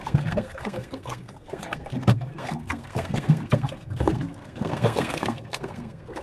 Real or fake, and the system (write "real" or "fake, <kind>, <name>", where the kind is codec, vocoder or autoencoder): fake, codec, SNAC